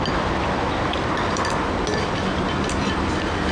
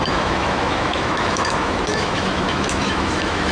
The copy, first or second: second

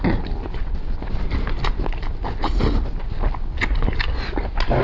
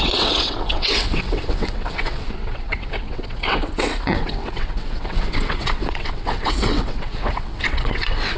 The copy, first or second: second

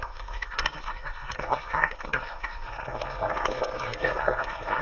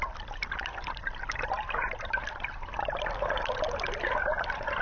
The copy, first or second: first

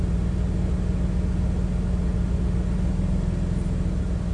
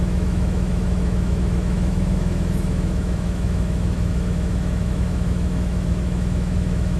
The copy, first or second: second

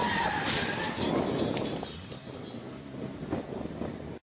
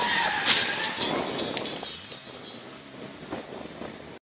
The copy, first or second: first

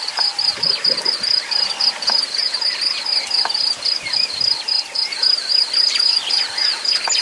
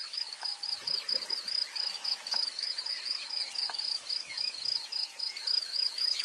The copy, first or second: second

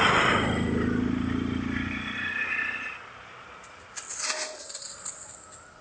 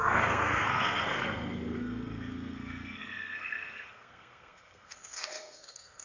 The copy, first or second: second